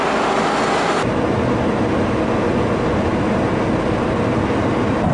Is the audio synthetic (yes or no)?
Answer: no